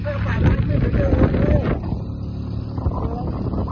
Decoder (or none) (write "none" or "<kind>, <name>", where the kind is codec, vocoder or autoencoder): none